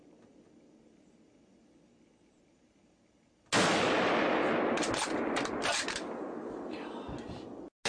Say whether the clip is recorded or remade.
recorded